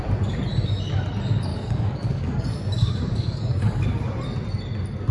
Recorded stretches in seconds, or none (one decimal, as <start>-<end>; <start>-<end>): 0.0-1.5; 3.6-5.1